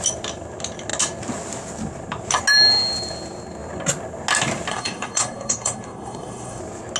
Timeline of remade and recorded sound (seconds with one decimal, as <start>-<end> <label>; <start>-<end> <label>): 0.0-4.7 recorded; 4.7-6.6 remade; 6.6-7.0 recorded

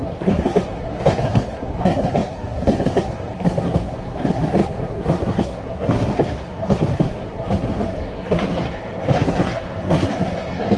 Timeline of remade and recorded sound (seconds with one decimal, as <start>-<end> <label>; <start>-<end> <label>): 0.0-10.8 remade

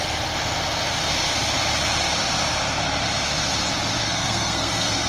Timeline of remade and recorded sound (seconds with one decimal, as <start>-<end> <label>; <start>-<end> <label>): 0.0-4.0 recorded; 4.0-5.1 remade

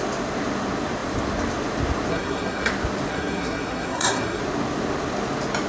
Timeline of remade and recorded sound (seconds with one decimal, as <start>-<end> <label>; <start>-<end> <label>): 0.0-2.1 recorded; 2.1-2.7 remade; 2.7-3.1 recorded; 3.1-4.4 remade; 4.4-5.7 recorded

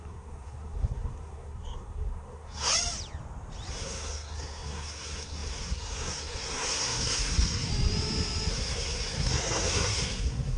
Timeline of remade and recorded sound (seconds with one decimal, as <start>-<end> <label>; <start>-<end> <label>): 0.0-2.7 remade; 2.7-3.7 recorded; 3.7-7.7 remade; 7.7-8.5 recorded; 8.5-10.6 remade

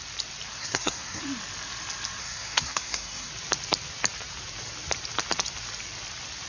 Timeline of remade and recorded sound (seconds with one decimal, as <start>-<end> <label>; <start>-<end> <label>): 0.0-0.6 recorded; 0.6-1.2 remade; 1.2-2.2 recorded; 2.2-3.3 remade; 3.3-6.5 recorded

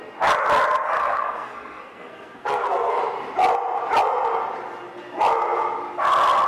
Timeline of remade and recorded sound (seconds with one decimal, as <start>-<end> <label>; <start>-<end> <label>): 0.0-1.0 recorded; 1.0-3.0 remade; 3.0-6.5 recorded

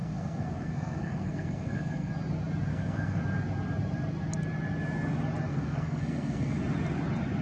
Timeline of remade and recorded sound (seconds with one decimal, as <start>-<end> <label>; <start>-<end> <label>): 0.0-2.1 remade; 2.1-2.7 recorded; 2.7-3.2 remade; 3.2-5.5 recorded; 5.5-6.6 remade; 6.6-7.4 recorded